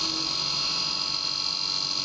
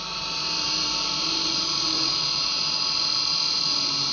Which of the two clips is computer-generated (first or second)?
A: second